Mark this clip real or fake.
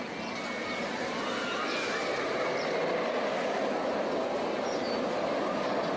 real